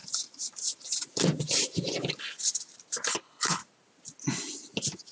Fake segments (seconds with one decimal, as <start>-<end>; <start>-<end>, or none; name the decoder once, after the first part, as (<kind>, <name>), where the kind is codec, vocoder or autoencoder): 3.1-3.6 (codec, HILCodec)